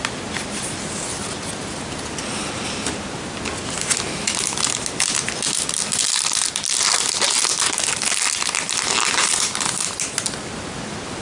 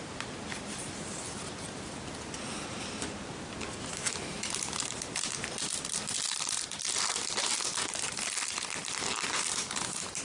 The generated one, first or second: second